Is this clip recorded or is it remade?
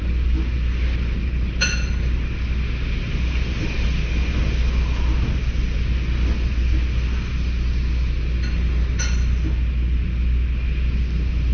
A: recorded